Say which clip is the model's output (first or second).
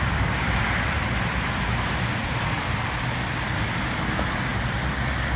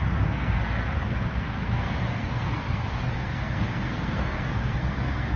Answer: second